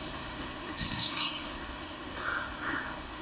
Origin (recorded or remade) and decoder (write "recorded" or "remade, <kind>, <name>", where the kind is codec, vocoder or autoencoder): remade, codec, SNAC